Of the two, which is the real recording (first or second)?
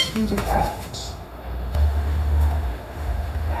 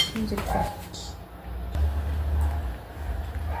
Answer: second